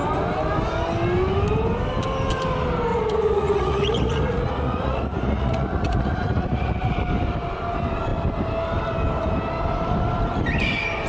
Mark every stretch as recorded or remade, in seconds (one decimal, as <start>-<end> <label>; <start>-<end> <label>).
0.0-2.9 recorded; 2.9-7.0 remade; 7.0-11.1 recorded